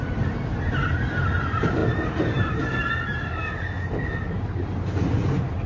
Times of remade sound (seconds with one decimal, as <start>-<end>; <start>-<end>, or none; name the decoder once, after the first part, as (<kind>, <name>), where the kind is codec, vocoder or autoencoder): none